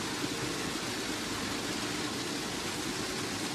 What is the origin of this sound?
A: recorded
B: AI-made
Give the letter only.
A